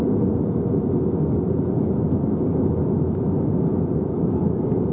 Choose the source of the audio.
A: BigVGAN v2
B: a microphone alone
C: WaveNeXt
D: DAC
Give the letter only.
B